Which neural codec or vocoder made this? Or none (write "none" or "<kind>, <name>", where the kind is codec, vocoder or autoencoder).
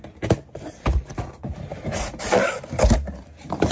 none